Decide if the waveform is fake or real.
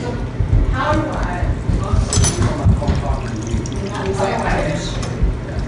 real